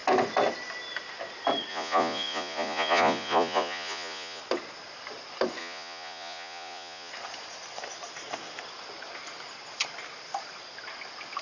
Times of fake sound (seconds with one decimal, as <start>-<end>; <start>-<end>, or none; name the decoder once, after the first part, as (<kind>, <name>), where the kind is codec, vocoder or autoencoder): 1.7-4.4 (vocoder, Vocos); 5.6-7.1